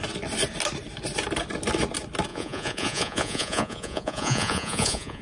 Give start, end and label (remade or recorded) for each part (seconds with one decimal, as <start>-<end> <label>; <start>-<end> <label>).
0.0-2.3 recorded; 2.3-5.2 remade